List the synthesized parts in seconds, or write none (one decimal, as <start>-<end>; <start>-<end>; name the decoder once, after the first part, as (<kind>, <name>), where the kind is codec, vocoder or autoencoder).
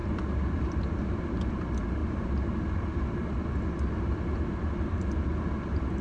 none